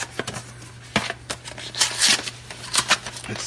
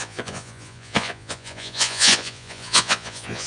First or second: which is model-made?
second